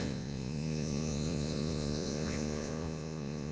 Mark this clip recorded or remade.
remade